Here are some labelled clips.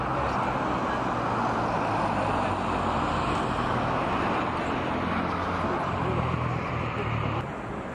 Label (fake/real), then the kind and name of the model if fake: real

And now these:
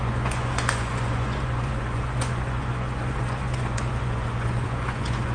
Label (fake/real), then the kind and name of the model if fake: fake, vocoder, Vocos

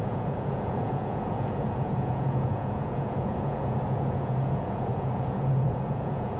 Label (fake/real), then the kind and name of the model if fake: fake, vocoder, Vocos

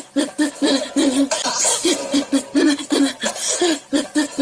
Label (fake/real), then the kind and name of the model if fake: real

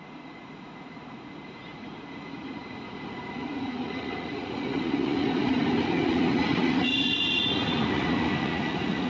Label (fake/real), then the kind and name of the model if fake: fake, vocoder, Vocos